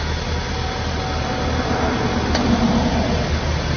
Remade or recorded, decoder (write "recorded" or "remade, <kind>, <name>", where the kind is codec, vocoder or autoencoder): recorded